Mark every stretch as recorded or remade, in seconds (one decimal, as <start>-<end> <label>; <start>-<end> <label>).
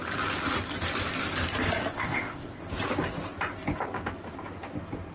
0.0-1.9 recorded; 1.9-2.6 remade; 2.6-5.1 recorded